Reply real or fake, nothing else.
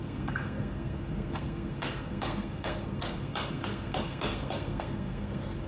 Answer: fake